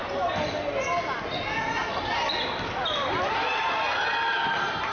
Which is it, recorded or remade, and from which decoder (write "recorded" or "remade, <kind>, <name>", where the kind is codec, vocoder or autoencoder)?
recorded